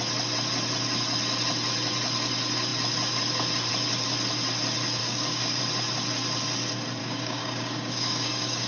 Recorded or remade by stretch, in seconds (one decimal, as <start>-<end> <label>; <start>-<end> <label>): 0.0-5.0 recorded; 5.0-5.6 remade; 5.6-7.0 recorded; 7.0-8.7 remade